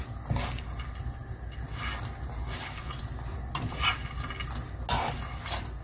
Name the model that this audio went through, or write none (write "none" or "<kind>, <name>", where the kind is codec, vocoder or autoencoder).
none